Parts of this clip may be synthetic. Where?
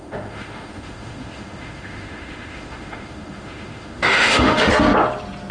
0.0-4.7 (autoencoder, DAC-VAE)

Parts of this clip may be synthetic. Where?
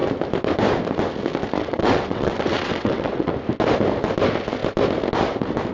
1.6-3.3 (vocoder, WaveNeXt)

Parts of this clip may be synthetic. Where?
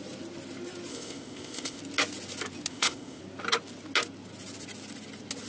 0.9-1.8 (codec, ZipCodec); 2.7-3.2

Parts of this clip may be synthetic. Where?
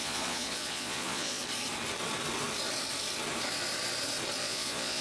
0.0-1.4 (vocoder, Vocos); 4.4-5.0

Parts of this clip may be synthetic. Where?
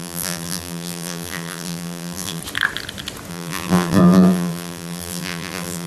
0.0-2.4 (vocoder, BigVGAN v2); 3.3-5.9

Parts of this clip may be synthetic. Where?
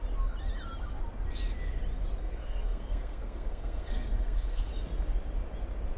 2.2-4.7 (codec, SNAC)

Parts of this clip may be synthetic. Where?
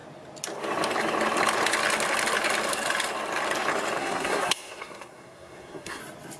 4.0-6.0 (codec, SNAC)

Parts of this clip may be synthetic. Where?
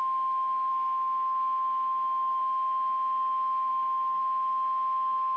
0.7-2.4 (autoencoder, DAC-VAE); 3.7-4.2